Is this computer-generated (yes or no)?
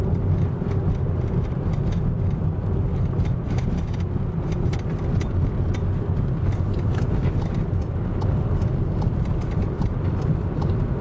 no